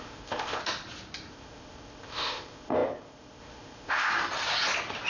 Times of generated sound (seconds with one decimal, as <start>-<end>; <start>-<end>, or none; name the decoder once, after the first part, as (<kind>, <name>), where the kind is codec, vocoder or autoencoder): 0.0-0.6 (codec, ZipCodec); 1.3-4.1

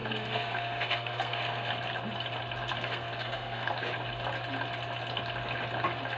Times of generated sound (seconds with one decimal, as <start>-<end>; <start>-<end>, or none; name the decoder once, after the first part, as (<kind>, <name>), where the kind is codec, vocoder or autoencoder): 0.0-1.7 (codec, SNAC); 2.7-3.7

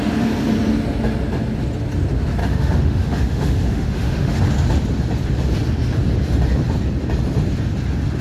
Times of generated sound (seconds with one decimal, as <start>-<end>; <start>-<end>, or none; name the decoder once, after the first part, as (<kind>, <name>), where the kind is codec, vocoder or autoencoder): 2.4-4.4 (autoencoder, DAC-VAE)

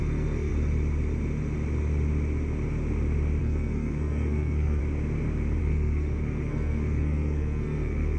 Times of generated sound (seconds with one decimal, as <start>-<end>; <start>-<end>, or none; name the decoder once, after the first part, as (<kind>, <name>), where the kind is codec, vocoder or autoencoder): 0.0-0.5 (codec, SNAC); 3.4-4.8; 5.6-8.2

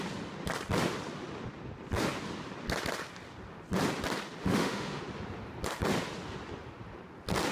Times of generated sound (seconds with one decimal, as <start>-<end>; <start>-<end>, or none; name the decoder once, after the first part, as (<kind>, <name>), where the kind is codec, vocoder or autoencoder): 4.4-5.0 (autoencoder, DAC-VAE)

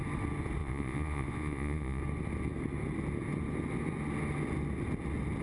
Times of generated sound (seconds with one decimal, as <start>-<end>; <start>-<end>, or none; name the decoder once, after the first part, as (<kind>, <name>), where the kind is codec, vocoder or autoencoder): 0.6-2.0 (vocoder, Vocos)